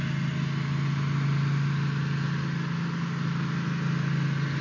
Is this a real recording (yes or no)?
yes